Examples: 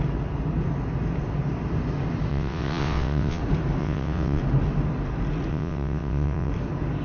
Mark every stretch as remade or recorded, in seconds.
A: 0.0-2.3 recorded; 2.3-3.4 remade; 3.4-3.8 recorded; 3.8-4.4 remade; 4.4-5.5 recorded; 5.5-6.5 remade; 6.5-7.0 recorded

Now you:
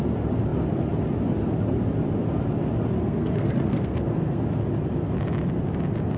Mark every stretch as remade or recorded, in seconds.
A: 0.0-3.0 recorded; 3.0-4.4 remade; 4.4-6.2 recorded

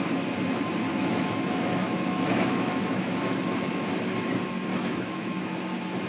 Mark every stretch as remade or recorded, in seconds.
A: 0.0-0.9 recorded; 0.9-3.9 remade; 3.9-4.7 recorded; 4.7-5.4 remade; 5.4-6.1 recorded

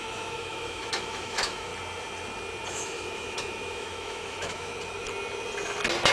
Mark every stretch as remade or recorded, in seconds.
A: 0.0-1.7 remade; 1.7-2.7 recorded; 2.7-4.7 remade; 4.7-6.1 recorded

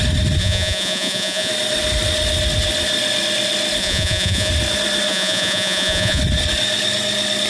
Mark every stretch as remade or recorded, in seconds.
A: 0.0-0.4 recorded; 0.4-1.5 remade; 1.5-3.8 recorded; 3.8-4.5 remade; 4.5-5.1 recorded; 5.1-6.2 remade; 6.2-7.5 recorded

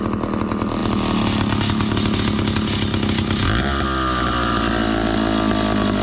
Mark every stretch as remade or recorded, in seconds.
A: 0.0-6.0 recorded

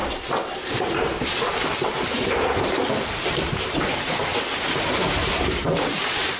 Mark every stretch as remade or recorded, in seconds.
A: 0.0-0.7 recorded; 0.7-6.4 remade